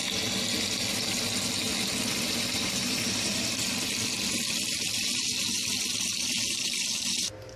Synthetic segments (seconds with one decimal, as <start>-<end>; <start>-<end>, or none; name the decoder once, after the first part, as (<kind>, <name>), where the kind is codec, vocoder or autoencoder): 2.5-3.7 (vocoder, BigVGAN v2)